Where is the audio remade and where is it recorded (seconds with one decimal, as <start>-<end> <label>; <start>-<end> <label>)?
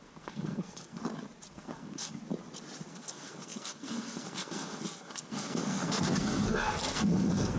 0.0-1.0 remade; 1.0-1.5 recorded; 1.5-2.2 remade; 2.2-2.9 recorded; 2.9-7.6 remade